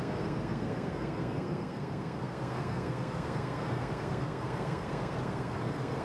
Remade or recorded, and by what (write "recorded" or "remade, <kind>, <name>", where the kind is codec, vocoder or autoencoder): remade, codec, SNAC